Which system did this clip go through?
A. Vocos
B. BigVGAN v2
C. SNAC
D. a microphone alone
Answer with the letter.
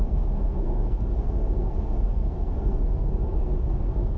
C